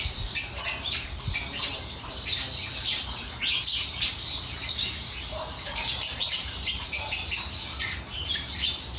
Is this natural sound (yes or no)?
no